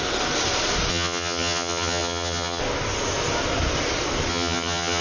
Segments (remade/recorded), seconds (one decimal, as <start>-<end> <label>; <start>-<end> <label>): 0.0-0.9 recorded; 0.9-2.6 remade; 2.6-4.3 recorded; 4.3-5.0 remade